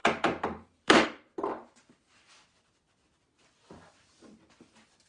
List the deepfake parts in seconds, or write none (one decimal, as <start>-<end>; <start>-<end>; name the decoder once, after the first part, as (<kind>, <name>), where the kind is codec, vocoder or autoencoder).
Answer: 0.0-2.3 (vocoder, BigVGAN v2)